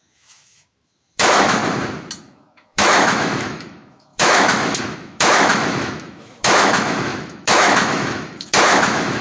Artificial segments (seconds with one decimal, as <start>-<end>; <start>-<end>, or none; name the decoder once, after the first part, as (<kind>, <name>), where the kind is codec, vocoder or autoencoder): 0.0-1.6 (autoencoder, DAC-VAE); 2.2-9.2